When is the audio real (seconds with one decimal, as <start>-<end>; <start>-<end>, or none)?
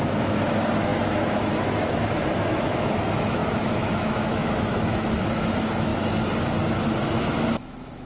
5.9-7.0